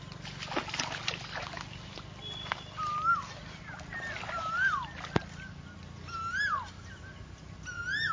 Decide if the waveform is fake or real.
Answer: real